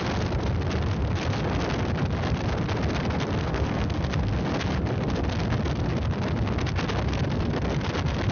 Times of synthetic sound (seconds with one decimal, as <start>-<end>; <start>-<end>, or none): 3.4-4.4